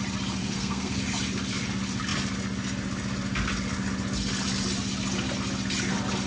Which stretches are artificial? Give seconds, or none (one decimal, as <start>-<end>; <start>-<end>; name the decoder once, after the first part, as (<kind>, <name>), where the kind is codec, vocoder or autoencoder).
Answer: 0.4-1.0 (codec, SNAC)